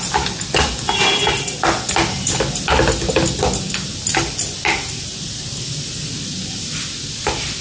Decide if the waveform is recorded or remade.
recorded